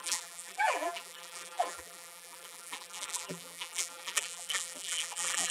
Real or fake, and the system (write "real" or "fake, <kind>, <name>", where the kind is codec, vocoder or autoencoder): fake, vocoder, BigVGAN v2